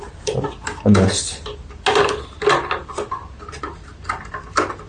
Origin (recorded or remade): remade